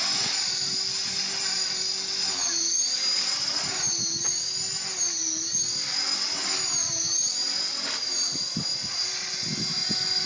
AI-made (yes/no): no